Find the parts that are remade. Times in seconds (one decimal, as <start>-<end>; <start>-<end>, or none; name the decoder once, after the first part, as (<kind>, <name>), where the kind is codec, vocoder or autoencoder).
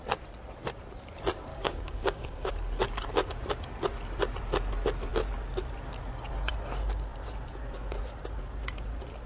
1.5-2.5 (codec, DAC)